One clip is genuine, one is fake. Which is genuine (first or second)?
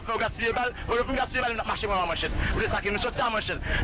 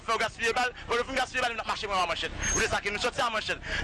second